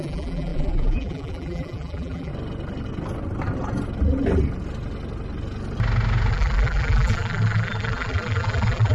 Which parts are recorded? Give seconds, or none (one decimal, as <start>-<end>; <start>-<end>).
2.3-6.3